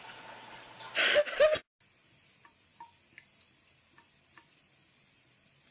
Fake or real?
real